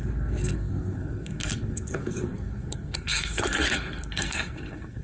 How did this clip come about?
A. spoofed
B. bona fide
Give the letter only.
A